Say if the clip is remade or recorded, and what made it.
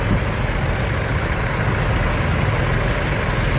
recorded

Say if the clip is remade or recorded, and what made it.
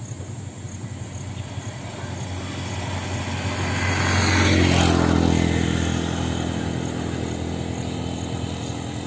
recorded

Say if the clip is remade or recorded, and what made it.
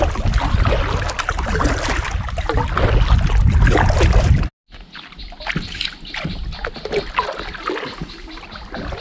recorded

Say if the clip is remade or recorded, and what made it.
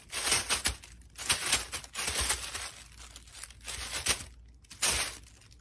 recorded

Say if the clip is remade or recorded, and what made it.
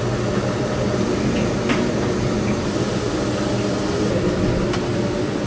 recorded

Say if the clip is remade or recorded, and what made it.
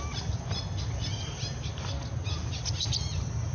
recorded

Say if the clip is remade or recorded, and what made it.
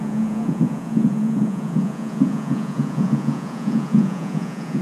remade, vocoder, Vocos